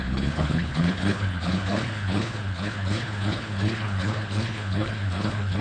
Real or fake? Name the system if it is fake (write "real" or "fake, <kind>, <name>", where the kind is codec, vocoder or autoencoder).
fake, codec, HILCodec